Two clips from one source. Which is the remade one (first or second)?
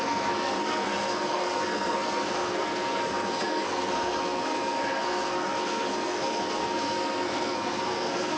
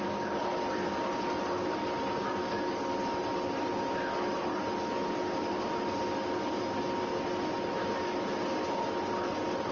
first